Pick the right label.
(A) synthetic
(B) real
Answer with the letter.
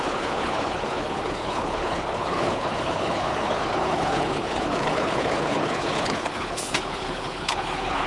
A